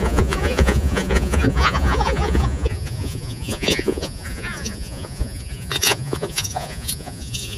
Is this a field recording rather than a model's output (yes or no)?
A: no